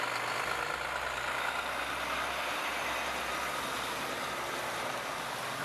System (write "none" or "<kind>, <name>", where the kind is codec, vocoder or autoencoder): none